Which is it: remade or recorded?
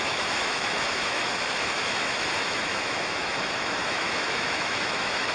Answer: remade